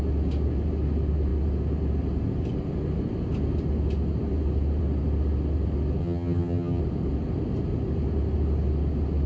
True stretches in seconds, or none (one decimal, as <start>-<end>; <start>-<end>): 0.0-6.0; 6.8-9.3